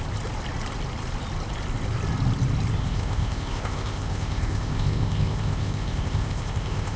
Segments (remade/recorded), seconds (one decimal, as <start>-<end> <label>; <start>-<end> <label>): 0.0-2.8 recorded; 2.8-7.0 remade